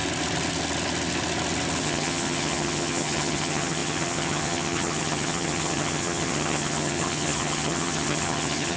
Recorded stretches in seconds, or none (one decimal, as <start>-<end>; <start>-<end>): 0.0-1.8